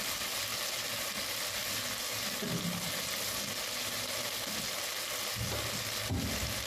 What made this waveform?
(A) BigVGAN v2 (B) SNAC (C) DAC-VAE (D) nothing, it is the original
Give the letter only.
D